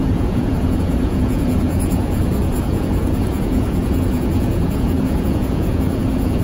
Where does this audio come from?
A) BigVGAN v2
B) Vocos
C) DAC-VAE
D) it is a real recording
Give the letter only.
B